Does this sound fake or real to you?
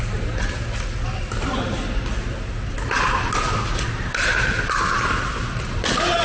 real